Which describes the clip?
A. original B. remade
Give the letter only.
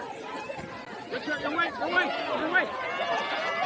A